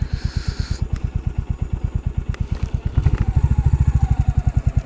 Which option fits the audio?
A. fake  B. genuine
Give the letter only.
B